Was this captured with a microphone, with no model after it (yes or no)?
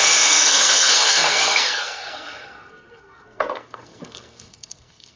no